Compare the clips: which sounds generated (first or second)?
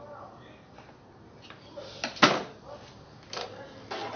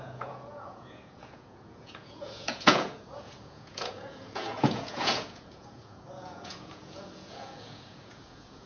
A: second